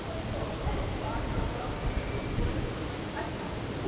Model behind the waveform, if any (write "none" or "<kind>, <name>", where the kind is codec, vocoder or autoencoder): none